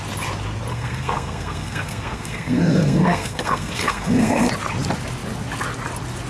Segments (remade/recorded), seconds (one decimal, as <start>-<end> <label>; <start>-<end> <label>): 0.0-0.7 recorded; 0.7-4.5 remade; 4.5-6.3 recorded